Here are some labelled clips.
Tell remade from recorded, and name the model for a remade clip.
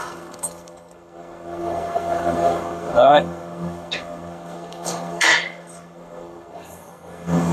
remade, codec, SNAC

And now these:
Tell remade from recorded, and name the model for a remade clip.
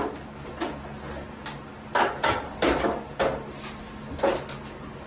recorded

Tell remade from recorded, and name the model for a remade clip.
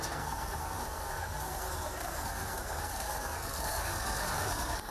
remade, codec, SNAC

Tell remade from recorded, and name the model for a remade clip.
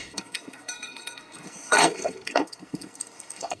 remade, codec, SNAC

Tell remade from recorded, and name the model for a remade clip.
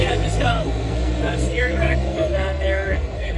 remade, codec, SNAC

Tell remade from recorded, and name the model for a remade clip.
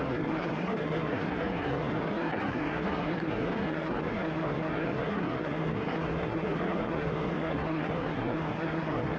remade, codec, SNAC